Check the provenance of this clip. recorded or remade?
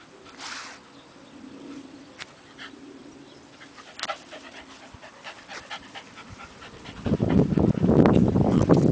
recorded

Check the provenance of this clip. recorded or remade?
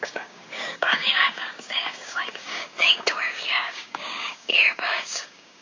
remade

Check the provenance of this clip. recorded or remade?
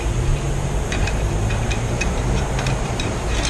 remade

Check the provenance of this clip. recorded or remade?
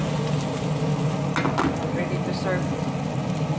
recorded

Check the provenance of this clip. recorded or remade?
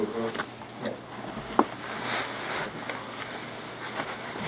recorded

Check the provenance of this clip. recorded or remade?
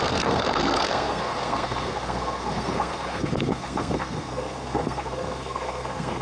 remade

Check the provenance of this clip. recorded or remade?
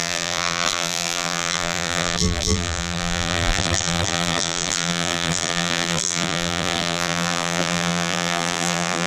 remade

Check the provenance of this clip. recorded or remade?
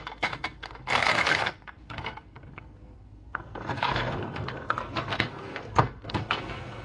remade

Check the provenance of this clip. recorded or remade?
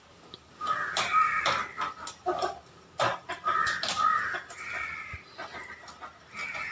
recorded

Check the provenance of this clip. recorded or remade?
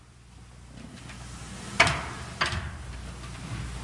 recorded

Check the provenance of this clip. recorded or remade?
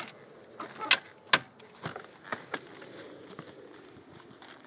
recorded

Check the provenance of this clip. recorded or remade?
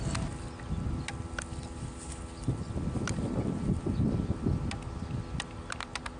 recorded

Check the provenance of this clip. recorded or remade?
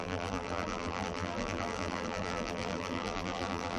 remade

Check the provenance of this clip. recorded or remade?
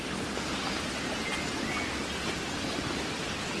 recorded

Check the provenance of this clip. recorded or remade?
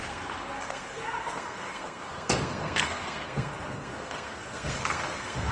remade